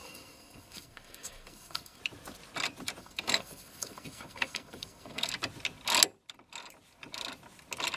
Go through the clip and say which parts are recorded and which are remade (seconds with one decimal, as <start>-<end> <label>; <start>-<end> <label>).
0.0-2.0 remade; 2.0-3.0 recorded; 3.0-5.3 remade; 5.3-8.0 recorded